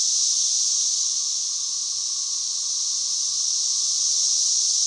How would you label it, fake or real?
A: fake